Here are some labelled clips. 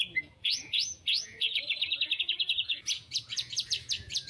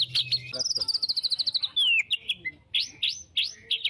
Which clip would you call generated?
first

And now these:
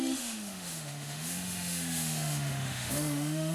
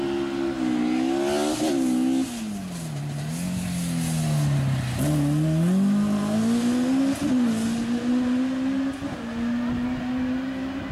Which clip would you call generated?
first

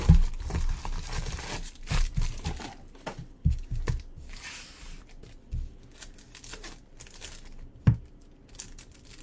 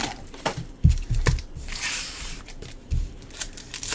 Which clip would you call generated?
second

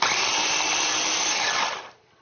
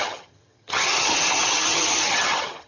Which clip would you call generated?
second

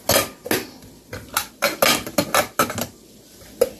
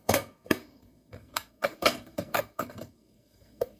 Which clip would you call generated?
second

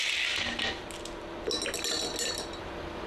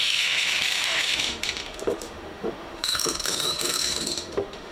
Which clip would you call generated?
second